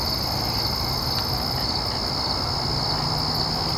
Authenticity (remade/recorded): recorded